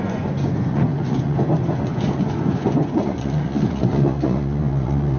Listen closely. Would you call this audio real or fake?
fake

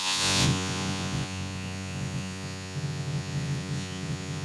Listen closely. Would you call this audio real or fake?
fake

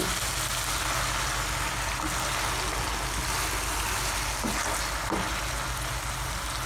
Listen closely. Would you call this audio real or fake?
real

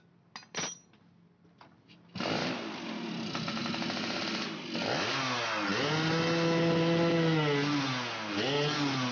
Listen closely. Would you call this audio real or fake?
real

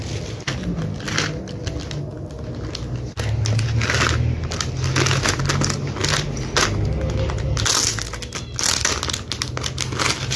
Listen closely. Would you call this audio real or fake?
real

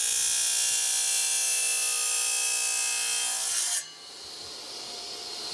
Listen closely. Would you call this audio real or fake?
real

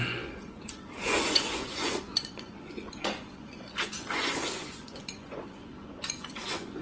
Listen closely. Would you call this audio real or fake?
fake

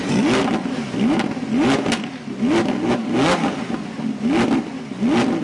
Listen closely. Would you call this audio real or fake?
real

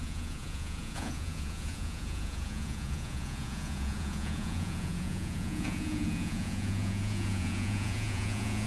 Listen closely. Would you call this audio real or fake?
fake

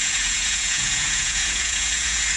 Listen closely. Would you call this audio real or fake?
fake